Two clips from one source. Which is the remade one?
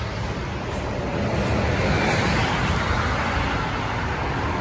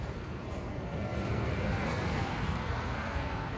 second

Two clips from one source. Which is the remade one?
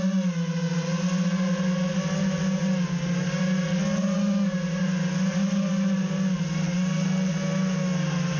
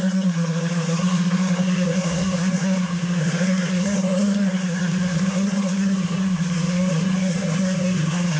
second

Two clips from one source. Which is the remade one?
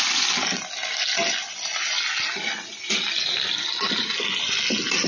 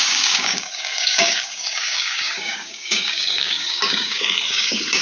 second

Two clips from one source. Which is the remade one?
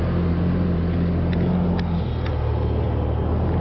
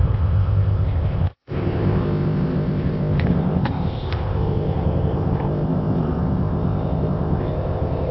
second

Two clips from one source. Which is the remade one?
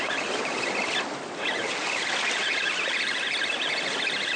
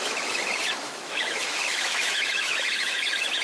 second